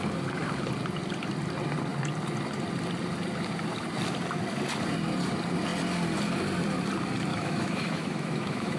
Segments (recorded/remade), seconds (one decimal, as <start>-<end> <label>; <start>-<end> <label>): 0.0-7.3 recorded; 7.3-8.8 remade